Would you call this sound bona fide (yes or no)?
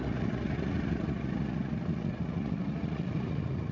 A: no